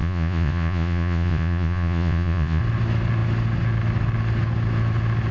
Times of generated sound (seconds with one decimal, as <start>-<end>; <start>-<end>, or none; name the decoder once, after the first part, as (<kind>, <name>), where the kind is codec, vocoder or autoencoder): 0.0-2.6 (vocoder, Vocos)